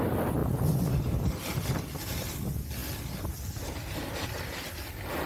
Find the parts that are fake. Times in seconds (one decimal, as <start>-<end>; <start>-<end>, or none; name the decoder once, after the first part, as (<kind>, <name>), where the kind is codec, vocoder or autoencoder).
0.4-1.3 (vocoder, BigVGAN v2)